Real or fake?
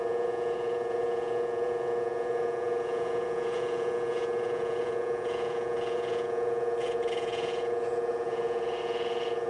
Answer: fake